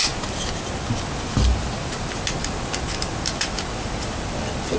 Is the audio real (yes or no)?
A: yes